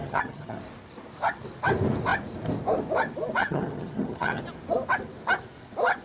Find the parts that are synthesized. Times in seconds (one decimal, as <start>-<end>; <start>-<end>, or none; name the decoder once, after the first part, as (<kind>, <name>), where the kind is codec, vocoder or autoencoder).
0.0-0.6 (vocoder, HiFi-GAN); 3.4-4.4